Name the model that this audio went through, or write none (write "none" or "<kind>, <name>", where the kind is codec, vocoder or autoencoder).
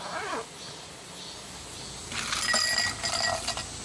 none